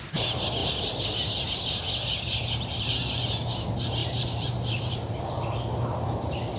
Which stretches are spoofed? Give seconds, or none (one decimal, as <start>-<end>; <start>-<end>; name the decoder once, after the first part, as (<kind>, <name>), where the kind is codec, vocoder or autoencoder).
4.0-5.2 (vocoder, BigVGAN v2)

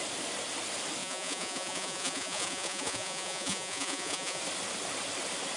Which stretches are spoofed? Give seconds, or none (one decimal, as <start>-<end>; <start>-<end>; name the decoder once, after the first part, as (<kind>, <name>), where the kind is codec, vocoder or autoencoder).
1.0-4.4 (vocoder, Vocos)

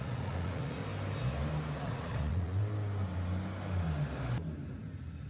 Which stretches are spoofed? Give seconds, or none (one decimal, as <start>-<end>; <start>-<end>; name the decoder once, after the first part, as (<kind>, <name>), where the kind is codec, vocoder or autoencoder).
0.0-0.8 (vocoder, Vocos); 1.8-2.6

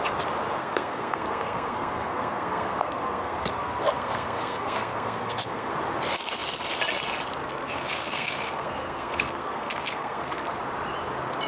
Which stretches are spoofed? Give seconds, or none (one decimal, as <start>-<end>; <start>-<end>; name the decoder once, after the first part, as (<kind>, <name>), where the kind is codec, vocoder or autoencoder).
0.6-5.7 (codec, SNAC); 7.4-10.6

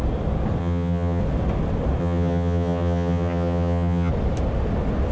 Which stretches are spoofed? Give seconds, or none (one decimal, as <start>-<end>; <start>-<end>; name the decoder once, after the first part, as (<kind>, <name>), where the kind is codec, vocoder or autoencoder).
0.6-1.2 (vocoder, HiFi-GAN); 2.0-4.1